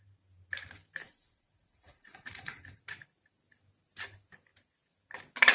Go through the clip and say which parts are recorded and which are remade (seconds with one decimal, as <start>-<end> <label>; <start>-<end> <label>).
0.0-1.0 recorded; 1.0-2.8 remade; 2.8-5.5 recorded